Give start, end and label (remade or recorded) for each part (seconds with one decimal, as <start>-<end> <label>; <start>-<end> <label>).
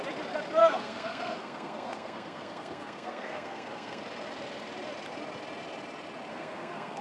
0.0-0.6 recorded; 0.6-4.0 remade; 4.0-6.3 recorded; 6.3-7.0 remade